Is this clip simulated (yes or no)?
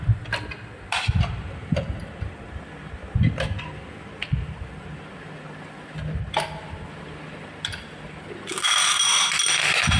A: no